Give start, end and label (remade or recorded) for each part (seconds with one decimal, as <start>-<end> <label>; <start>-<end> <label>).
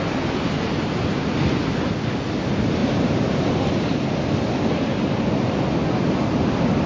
0.0-2.8 recorded; 2.8-4.0 remade; 4.0-6.9 recorded